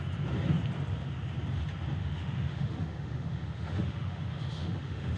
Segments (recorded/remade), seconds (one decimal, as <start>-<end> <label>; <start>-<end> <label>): 0.0-2.0 recorded; 2.0-5.2 remade